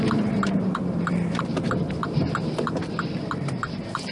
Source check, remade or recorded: remade